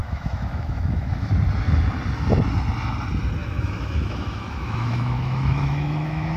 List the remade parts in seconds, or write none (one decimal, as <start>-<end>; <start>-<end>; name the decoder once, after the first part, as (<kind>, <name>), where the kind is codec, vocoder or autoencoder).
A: 0.0-1.3 (autoencoder, DAC-VAE); 3.4-6.4

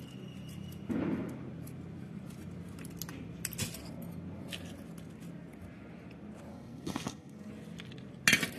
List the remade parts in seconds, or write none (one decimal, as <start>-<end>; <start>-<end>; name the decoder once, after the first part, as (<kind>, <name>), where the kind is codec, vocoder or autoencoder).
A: 6.5-7.5 (codec, SNAC)

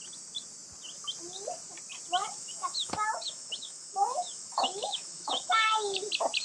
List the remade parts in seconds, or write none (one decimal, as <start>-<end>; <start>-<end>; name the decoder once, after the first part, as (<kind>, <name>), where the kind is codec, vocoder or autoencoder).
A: 2.2-6.0 (autoencoder, DAC-VAE)

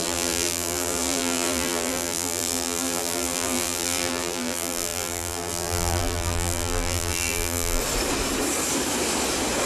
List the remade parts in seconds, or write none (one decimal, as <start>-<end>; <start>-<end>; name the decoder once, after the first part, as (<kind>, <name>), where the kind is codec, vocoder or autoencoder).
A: 0.0-7.8 (vocoder, BigVGAN v2)

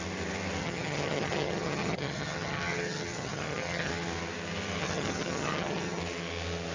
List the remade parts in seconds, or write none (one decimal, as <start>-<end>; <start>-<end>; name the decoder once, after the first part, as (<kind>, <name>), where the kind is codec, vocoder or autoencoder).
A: 0.6-3.9 (vocoder, HiFi-GAN); 4.8-6.0

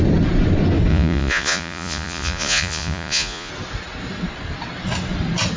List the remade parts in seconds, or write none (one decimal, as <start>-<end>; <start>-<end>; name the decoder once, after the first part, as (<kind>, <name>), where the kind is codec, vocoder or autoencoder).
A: 0.9-3.5 (vocoder, Vocos)